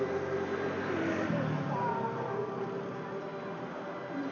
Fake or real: real